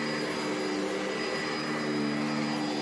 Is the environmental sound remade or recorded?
recorded